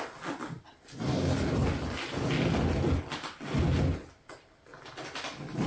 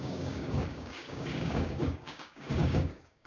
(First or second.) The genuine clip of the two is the first